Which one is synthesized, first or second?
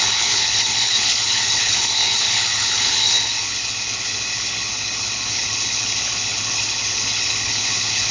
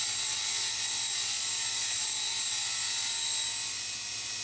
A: first